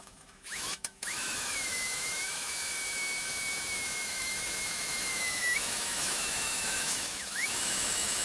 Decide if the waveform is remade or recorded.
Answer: remade